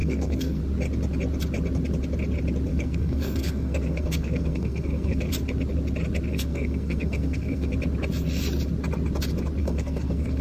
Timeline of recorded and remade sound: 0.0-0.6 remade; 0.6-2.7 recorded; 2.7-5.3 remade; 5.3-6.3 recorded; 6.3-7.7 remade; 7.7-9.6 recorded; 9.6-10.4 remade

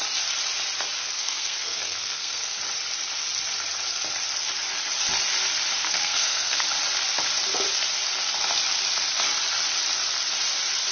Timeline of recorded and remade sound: 0.0-1.0 recorded; 1.0-2.6 remade; 2.6-5.8 recorded; 5.8-6.6 remade; 6.6-10.9 recorded

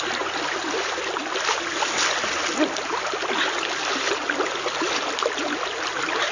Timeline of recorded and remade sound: 0.0-6.3 recorded

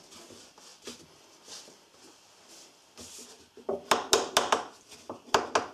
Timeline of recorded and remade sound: 0.0-5.7 recorded

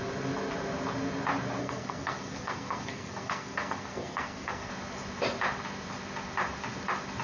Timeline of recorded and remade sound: 0.0-1.6 recorded; 1.6-4.7 remade; 4.7-7.2 recorded